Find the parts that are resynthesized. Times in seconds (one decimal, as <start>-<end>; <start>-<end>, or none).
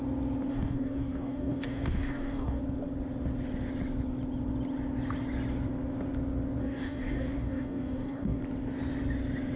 0.5-2.6; 6.6-8.4